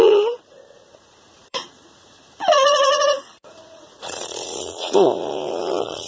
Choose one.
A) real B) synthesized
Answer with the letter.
B